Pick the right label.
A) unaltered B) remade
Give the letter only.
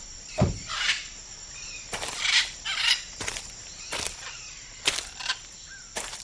B